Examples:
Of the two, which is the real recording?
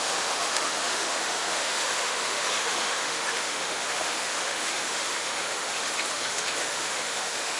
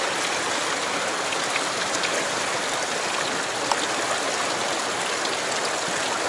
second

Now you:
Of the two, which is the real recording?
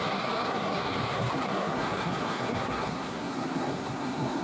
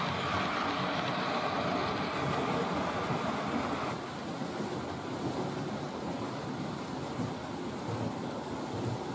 second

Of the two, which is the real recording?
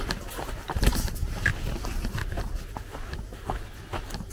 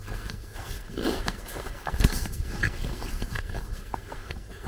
first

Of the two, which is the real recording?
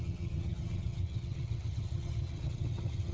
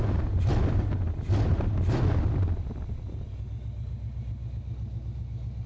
second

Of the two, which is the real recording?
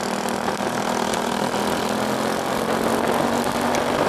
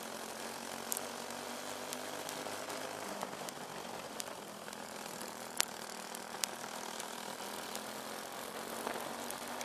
first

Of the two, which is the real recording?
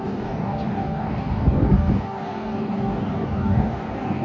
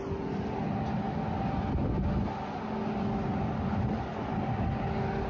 second